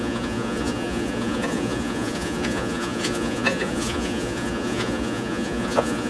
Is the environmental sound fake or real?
fake